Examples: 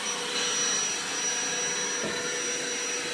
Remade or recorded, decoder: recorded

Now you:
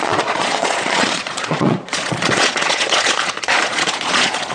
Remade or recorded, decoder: remade, vocoder, Vocos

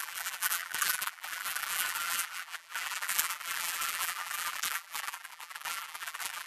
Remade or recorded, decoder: remade, vocoder, BigVGAN v2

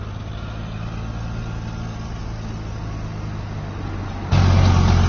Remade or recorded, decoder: recorded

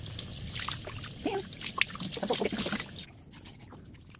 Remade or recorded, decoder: recorded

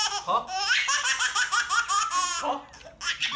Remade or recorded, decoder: recorded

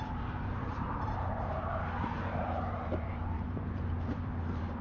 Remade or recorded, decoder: remade, vocoder, BigVGAN v2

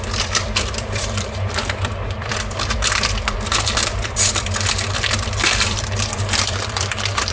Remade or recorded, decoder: remade, vocoder, BigVGAN v2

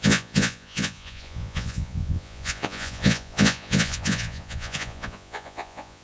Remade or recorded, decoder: remade, vocoder, Vocos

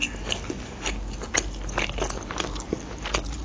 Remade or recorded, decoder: recorded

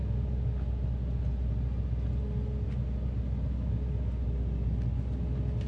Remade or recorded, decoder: recorded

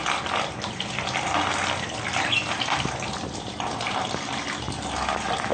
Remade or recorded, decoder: recorded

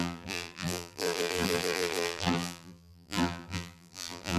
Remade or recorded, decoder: remade, vocoder, BigVGAN v2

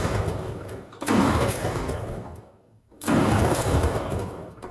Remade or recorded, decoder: remade, codec, DAC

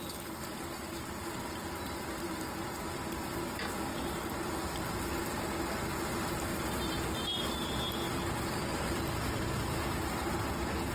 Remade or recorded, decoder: recorded